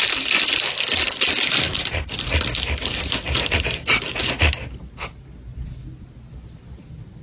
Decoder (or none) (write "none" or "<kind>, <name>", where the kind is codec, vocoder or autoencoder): none